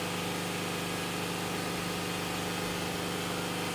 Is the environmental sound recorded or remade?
recorded